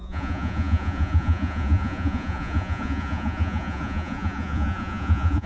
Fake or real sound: fake